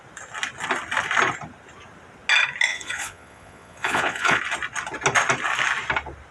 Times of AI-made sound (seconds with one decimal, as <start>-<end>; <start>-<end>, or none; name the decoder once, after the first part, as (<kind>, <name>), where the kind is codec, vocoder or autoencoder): 2.7-4.4 (vocoder, Vocos)